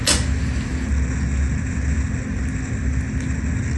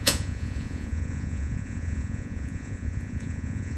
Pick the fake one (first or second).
second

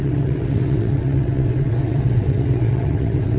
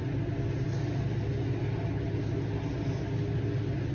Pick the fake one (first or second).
first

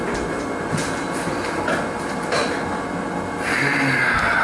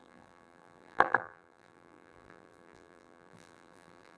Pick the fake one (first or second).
second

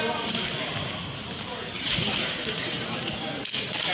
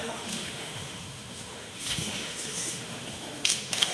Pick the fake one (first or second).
second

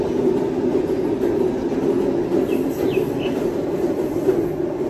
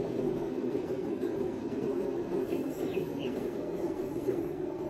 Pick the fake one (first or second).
second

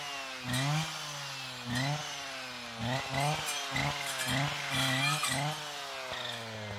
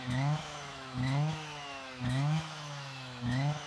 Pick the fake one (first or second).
second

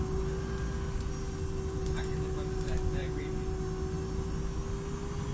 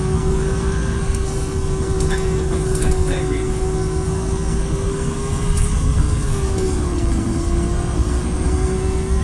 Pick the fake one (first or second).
second